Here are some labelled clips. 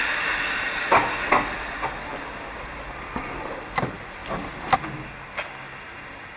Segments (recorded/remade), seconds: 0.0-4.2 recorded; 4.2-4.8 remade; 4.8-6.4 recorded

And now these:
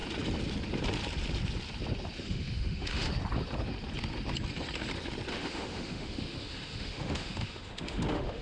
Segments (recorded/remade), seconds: 0.0-2.2 recorded; 2.2-3.1 remade; 3.1-5.3 recorded; 5.3-8.4 remade